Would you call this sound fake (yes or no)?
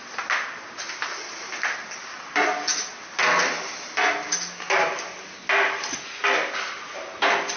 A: no